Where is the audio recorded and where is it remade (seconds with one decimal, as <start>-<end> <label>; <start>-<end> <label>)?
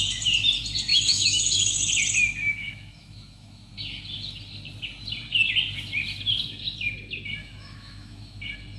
0.0-0.9 recorded; 0.9-1.9 remade; 1.9-2.5 recorded; 2.5-3.7 remade; 3.7-7.4 recorded; 7.4-8.4 remade; 8.4-8.8 recorded